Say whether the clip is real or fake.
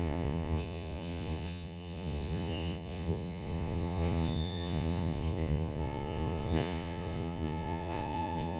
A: fake